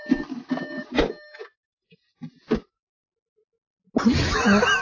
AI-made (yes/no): no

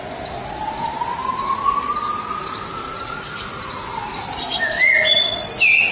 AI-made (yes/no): no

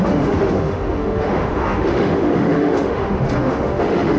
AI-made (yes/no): yes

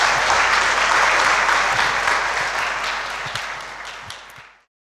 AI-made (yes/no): no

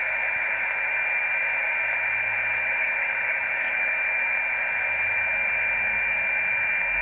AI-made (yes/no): no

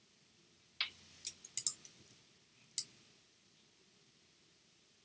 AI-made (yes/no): no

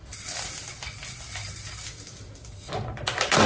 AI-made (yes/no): no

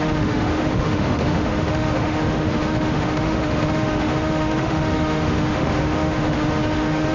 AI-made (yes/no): yes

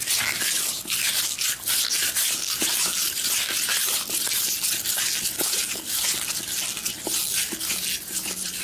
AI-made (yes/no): no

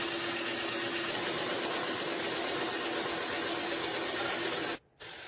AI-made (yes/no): no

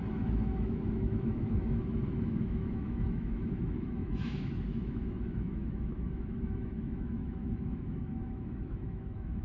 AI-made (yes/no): yes